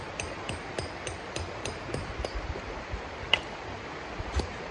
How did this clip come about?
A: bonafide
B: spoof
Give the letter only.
A